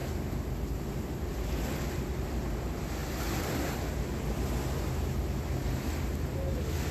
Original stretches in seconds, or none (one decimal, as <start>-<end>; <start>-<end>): 0.0-6.9